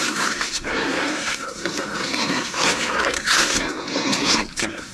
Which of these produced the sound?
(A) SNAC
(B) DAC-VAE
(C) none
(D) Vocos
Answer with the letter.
A